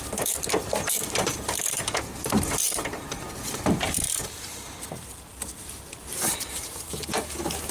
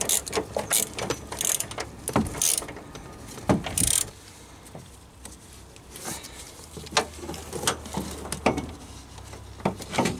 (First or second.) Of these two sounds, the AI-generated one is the first